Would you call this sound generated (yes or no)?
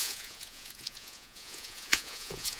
yes